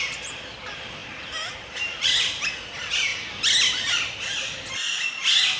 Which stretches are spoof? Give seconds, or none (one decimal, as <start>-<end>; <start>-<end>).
1.0-2.4